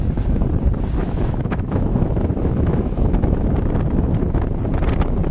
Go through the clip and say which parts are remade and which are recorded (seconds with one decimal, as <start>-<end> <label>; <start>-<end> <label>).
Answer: 0.0-1.0 recorded; 1.0-3.5 remade; 3.5-5.3 recorded